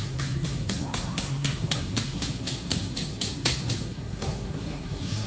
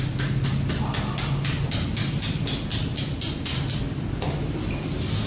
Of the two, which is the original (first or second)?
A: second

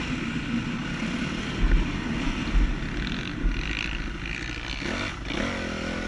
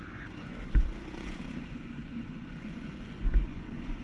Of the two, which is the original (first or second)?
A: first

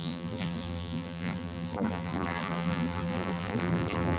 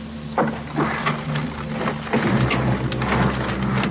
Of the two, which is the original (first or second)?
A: second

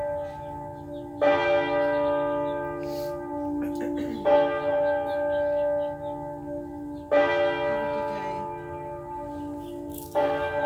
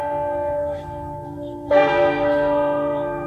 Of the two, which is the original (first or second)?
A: first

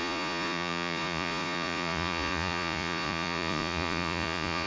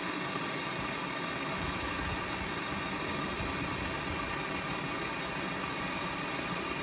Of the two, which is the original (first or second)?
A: second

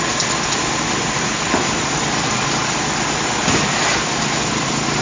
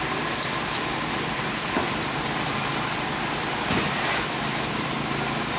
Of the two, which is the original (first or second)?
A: second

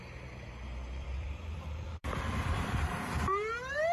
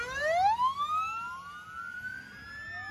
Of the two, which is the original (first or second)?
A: second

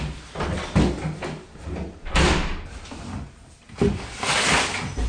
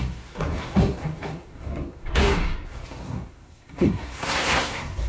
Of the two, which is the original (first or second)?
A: first